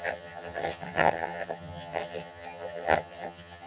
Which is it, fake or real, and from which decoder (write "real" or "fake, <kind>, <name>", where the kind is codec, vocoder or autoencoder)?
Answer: fake, vocoder, HiFi-GAN